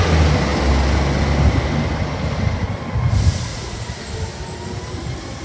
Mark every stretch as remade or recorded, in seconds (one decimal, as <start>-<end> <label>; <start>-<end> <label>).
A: 0.0-3.5 recorded; 3.5-4.0 remade; 4.0-5.4 recorded